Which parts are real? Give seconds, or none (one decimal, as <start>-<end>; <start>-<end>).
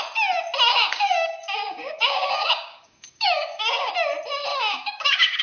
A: 0.0-0.7; 3.9-4.5